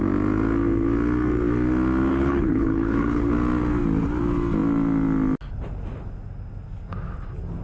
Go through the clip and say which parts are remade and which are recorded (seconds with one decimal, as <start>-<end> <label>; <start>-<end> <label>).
0.0-2.1 recorded; 2.1-3.3 remade; 3.3-7.6 recorded